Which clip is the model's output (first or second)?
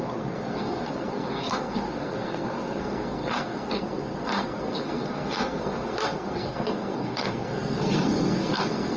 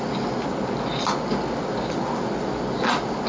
first